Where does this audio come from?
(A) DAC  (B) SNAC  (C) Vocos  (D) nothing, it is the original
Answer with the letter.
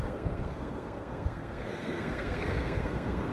B